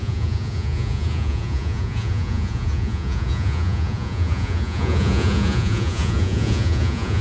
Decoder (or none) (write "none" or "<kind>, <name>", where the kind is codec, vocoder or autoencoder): vocoder, Vocos